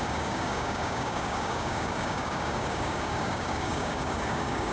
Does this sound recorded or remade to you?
remade